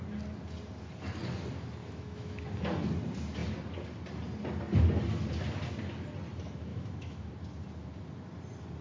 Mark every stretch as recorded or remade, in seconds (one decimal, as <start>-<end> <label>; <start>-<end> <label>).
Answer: 0.0-1.8 recorded; 1.8-2.4 remade; 2.4-6.7 recorded; 6.7-7.3 remade; 7.3-8.8 recorded

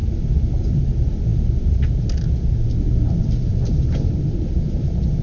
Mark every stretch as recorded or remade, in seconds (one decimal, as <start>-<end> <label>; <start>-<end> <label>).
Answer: 0.0-0.6 recorded; 0.6-1.3 remade; 1.3-3.1 recorded; 3.1-5.2 remade